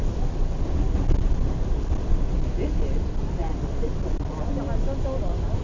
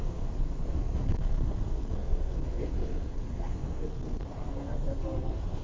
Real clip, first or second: first